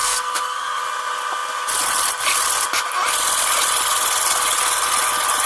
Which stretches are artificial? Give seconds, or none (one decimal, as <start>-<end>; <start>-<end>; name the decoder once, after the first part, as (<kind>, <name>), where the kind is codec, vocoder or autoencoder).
0.0-0.8 (codec, SNAC)